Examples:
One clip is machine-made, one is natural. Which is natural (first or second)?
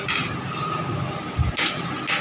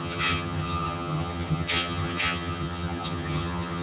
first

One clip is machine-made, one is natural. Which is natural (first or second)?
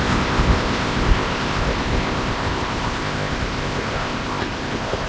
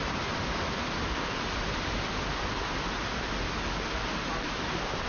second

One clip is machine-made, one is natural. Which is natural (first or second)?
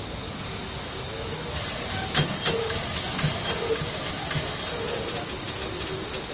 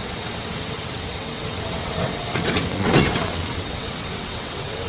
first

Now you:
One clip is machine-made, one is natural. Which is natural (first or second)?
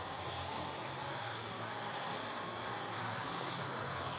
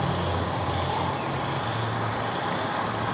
second